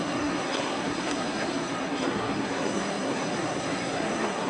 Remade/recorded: remade